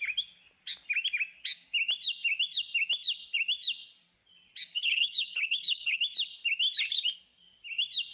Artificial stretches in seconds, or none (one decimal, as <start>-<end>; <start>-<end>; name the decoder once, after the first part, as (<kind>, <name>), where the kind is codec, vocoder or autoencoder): 4.7-6.0 (codec, HILCodec)